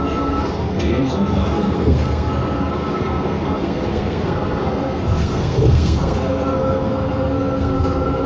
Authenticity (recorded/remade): remade